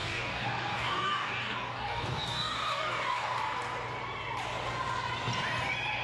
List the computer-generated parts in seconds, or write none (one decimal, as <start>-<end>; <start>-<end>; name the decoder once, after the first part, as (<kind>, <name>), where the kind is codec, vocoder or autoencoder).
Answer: 0.0-3.4 (codec, DAC)

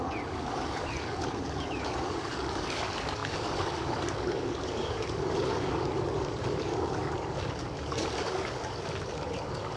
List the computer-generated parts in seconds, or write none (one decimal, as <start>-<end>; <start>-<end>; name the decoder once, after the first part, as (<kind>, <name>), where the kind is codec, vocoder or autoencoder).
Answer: 0.0-9.8 (codec, DAC)

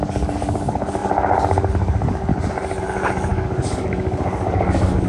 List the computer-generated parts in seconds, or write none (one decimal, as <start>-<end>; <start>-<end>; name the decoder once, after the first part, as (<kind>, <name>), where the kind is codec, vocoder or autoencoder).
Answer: 0.0-2.3 (codec, DAC); 2.8-5.1

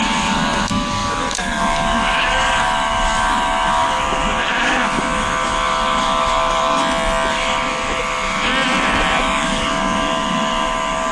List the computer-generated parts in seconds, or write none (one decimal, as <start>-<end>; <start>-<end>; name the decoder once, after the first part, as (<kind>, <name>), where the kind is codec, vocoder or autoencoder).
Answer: 0.0-6.8 (codec, DAC); 7.3-8.5; 9.2-11.1

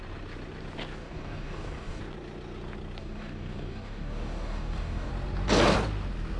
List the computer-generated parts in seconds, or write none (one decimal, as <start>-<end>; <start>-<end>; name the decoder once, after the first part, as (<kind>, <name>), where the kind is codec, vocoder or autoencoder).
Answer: 1.0-2.0 (codec, DAC); 3.0-5.1

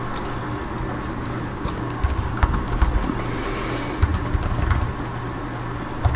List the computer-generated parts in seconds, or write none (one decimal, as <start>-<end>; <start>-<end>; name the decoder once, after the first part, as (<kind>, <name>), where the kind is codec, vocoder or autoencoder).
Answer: 1.5-2.8 (codec, DAC)